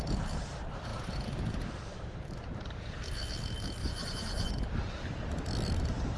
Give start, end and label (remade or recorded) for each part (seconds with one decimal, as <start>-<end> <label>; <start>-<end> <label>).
0.0-3.8 recorded; 3.8-4.5 remade; 4.5-6.2 recorded